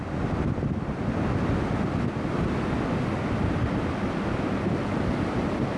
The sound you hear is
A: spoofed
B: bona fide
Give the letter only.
B